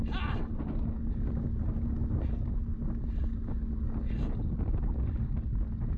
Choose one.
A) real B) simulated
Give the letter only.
A